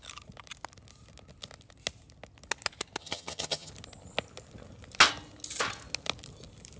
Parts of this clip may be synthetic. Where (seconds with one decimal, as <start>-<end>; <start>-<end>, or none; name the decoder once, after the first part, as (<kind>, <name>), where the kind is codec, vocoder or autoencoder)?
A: 3.0-3.7 (vocoder, HiFi-GAN)